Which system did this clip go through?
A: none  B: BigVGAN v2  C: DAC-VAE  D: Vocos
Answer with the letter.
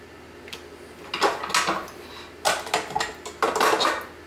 A